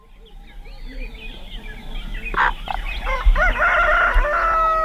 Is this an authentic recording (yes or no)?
yes